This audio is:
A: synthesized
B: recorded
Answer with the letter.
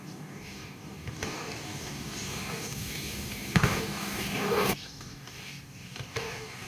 A